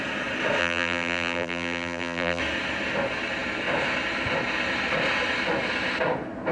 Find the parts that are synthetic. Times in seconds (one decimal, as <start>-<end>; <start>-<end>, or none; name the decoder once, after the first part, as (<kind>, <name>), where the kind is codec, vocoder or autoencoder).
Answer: 0.6-2.4 (vocoder, BigVGAN v2)